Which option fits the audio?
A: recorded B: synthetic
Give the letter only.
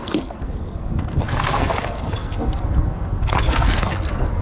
B